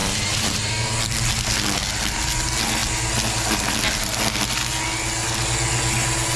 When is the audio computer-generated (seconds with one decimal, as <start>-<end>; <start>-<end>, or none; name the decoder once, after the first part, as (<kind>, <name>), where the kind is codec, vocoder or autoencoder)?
0.0-0.7 (vocoder, BigVGAN v2)